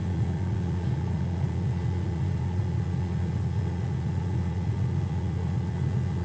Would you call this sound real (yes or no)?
no